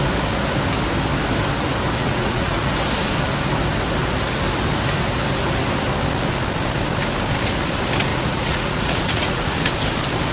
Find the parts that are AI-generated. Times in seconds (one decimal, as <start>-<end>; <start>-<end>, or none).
2.0-2.7; 8.1-9.7